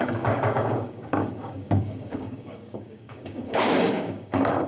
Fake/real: fake